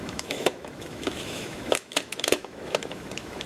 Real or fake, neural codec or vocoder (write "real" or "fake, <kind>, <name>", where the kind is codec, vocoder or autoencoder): fake, autoencoder, DAC-VAE